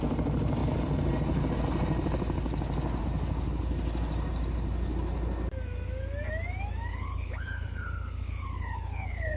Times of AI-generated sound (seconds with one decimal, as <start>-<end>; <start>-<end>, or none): 6.9-9.4